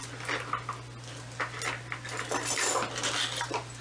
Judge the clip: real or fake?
real